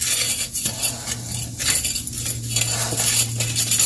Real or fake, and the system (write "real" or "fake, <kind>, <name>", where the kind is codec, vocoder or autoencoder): real